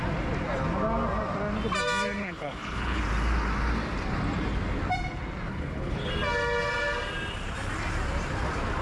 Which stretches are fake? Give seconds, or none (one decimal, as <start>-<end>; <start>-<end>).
2.2-3.0; 5.5-6.1